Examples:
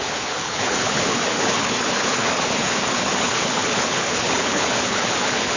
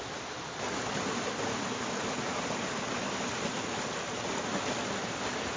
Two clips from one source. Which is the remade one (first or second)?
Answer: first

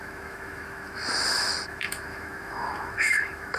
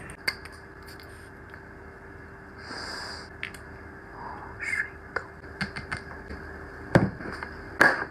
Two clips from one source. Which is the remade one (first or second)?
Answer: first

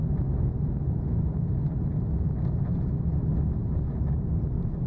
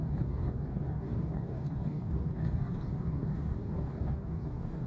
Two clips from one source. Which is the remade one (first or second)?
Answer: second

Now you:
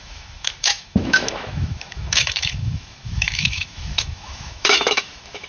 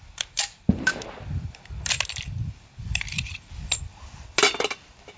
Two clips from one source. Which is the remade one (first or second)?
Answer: first